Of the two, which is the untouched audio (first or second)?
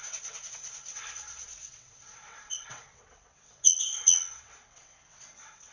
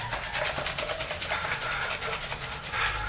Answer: second